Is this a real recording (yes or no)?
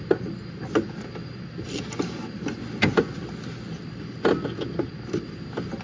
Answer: yes